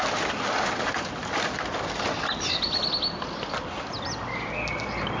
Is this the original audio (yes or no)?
yes